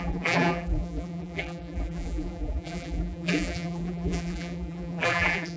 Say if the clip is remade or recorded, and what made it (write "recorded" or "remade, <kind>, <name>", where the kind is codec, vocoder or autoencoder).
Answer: remade, vocoder, BigVGAN v2